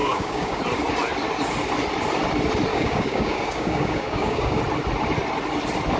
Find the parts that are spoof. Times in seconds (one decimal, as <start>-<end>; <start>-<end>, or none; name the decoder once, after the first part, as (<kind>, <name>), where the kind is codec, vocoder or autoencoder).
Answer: 0.0-0.6 (codec, DAC); 2.7-4.6